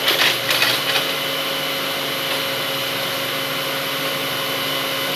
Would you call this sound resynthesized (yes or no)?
no